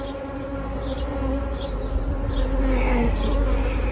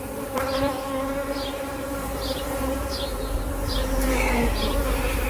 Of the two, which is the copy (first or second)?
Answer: second